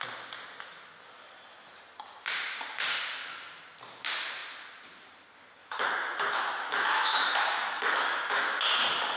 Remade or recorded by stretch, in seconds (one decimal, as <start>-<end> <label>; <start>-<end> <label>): 0.0-5.6 recorded; 5.6-8.6 remade; 8.6-9.2 recorded